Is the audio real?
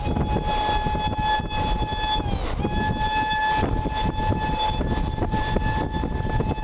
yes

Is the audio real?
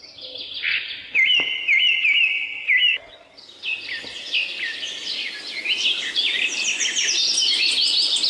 yes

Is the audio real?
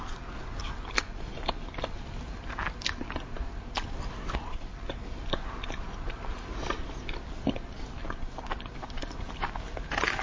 yes